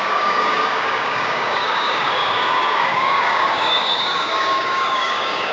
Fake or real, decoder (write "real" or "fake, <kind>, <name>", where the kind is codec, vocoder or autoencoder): fake, codec, DAC